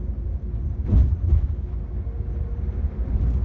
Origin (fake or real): real